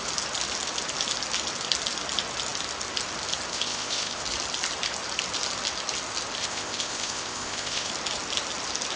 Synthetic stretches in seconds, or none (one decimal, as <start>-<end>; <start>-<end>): 3.5-4.2; 6.4-7.9